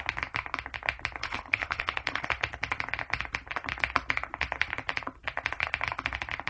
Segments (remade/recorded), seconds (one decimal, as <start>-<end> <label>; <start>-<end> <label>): 0.0-1.2 recorded; 1.2-2.3 remade; 2.3-6.5 recorded